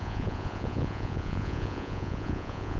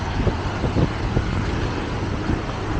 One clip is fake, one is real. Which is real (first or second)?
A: second